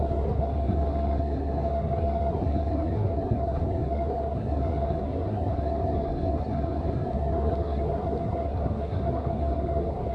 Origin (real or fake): fake